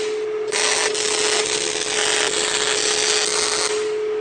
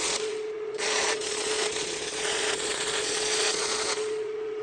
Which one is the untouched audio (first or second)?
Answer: first